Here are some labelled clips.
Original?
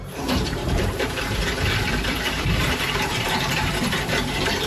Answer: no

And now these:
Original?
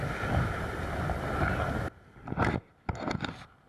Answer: yes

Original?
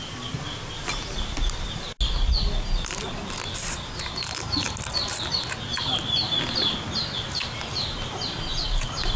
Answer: yes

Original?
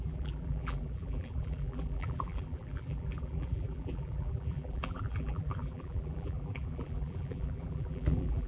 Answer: no